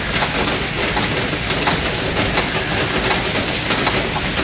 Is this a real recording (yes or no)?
yes